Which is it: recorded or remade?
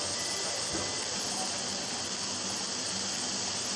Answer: recorded